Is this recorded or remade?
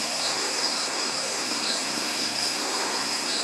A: remade